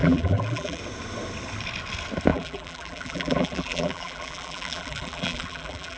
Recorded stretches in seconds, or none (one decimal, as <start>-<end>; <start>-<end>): 0.8-2.3